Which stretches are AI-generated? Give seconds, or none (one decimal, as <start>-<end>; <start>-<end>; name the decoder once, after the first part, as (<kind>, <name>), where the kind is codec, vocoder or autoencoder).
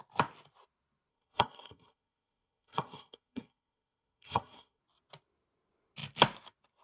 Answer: 1.1-4.8 (codec, SNAC)